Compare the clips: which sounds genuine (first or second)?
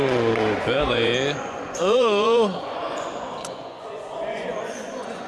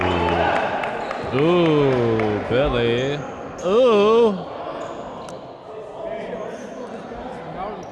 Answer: second